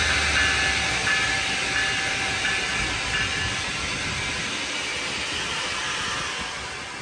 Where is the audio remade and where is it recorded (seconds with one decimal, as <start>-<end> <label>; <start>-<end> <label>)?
0.0-7.0 recorded